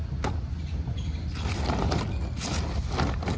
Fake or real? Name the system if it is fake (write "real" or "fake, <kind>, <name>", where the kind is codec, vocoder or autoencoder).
real